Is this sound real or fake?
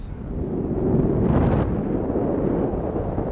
real